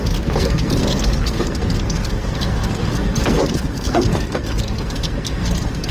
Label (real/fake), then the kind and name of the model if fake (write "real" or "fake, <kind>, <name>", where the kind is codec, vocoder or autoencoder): fake, codec, SNAC